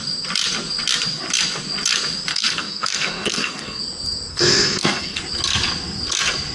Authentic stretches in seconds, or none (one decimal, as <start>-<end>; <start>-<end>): 0.0-2.3; 3.8-4.3; 5.2-6.5